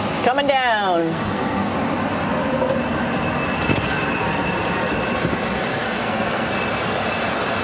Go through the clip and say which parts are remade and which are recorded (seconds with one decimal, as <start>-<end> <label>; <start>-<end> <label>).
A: 0.0-1.0 recorded; 1.0-1.7 remade; 1.7-5.8 recorded; 5.8-6.5 remade; 6.5-7.6 recorded